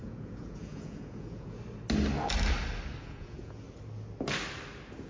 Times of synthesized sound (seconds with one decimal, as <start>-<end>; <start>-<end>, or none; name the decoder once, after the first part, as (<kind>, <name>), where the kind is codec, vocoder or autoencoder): 0.0-1.6 (vocoder, Vocos); 3.0-3.6